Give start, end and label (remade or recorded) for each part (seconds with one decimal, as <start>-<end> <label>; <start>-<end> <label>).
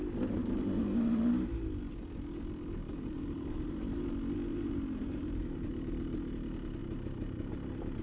0.0-0.4 recorded; 0.4-1.3 remade; 1.3-2.8 recorded; 2.8-4.1 remade; 4.1-4.5 recorded; 4.5-5.7 remade; 5.7-8.0 recorded